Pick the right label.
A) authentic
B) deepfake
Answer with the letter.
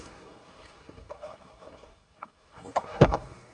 B